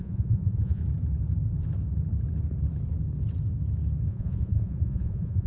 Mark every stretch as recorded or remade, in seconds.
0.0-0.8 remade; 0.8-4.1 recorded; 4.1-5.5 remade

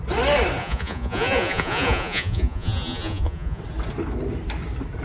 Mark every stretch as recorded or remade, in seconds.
0.0-0.6 recorded; 0.6-3.6 remade; 3.6-5.0 recorded

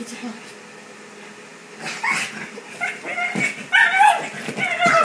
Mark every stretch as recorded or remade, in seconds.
0.0-5.0 recorded

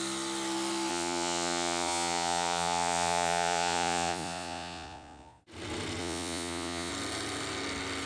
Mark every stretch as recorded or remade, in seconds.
0.0-0.9 recorded; 0.9-5.4 remade; 5.4-6.0 recorded; 6.0-6.9 remade; 6.9-8.1 recorded

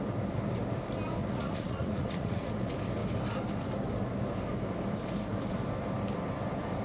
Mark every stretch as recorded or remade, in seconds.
0.0-1.2 recorded; 1.2-2.5 remade; 2.5-6.8 recorded

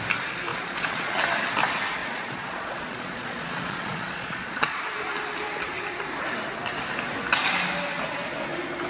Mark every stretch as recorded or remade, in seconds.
0.0-0.5 recorded; 0.5-1.2 remade; 1.2-2.0 recorded; 2.0-4.8 remade; 4.8-8.9 recorded

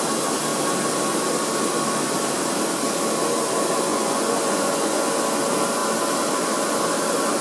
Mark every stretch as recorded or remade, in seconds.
0.0-3.9 recorded; 3.9-5.1 remade; 5.1-7.4 recorded